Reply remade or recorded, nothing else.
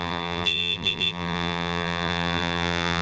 remade